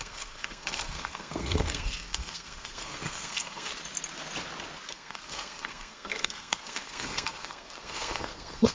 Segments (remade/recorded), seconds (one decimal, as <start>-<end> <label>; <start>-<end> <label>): 0.0-3.7 remade; 3.7-4.9 recorded; 4.9-8.7 remade